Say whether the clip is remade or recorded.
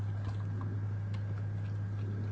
recorded